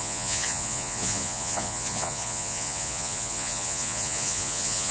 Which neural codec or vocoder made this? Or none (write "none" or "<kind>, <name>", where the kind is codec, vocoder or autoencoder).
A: vocoder, Vocos